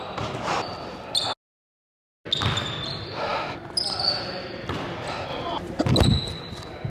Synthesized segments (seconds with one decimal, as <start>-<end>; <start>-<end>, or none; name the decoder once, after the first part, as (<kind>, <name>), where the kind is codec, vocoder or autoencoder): none